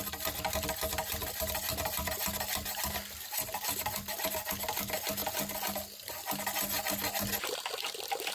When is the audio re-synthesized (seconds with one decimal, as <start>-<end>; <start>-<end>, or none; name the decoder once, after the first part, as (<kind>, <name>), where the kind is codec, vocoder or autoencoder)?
none

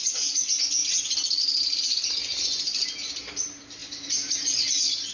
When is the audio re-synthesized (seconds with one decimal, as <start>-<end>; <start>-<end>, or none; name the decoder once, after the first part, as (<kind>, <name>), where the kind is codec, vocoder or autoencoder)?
none

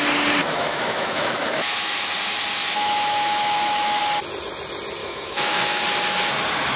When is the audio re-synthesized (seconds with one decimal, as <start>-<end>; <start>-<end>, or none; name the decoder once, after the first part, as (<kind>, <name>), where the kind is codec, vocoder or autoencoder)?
0.4-2.1 (autoencoder, DAC-VAE); 2.6-4.0; 5.0-5.8

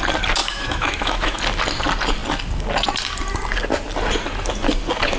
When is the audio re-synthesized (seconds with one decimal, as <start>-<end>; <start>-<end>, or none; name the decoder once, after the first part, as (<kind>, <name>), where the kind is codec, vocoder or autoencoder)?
0.4-1.4 (autoencoder, DAC-VAE)

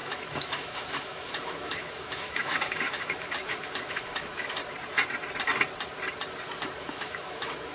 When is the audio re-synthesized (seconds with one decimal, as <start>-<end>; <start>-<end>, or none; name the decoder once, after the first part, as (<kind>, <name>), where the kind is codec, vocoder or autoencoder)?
0.0-4.6 (autoencoder, DAC-VAE); 6.8-7.7

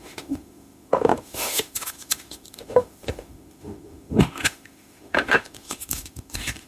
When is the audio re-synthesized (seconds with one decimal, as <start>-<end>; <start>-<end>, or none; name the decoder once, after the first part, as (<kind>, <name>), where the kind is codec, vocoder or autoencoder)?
0.0-6.7 (autoencoder, DAC-VAE)

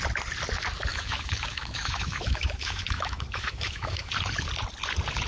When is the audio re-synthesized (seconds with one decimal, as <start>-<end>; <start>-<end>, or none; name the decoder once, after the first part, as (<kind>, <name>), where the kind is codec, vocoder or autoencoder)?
0.9-4.1 (autoencoder, DAC-VAE)